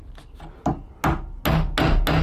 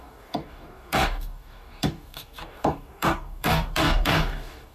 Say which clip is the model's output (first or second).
second